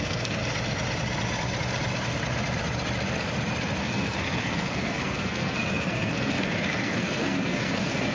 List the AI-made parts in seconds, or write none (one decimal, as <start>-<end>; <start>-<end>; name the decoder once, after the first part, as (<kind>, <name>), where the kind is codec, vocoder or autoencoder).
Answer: 0.0-0.4 (codec, SNAC); 3.8-8.1